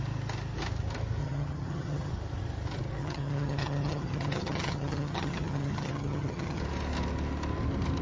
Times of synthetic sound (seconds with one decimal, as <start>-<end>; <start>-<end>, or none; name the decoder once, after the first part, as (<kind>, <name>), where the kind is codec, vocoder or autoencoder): 1.2-2.1 (vocoder, HiFi-GAN); 3.0-6.6